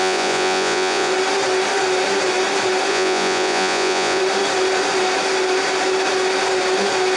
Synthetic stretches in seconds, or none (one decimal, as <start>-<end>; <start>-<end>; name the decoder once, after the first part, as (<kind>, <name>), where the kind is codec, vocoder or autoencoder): 0.0-1.1 (vocoder, Vocos); 2.9-4.2